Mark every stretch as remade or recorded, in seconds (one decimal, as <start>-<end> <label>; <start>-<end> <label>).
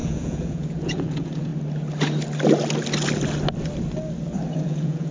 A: 0.0-1.5 remade; 1.5-4.6 recorded; 4.6-5.1 remade